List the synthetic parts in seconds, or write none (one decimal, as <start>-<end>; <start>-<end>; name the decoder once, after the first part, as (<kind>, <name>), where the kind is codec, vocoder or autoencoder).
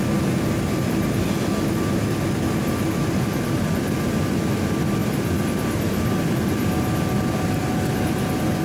none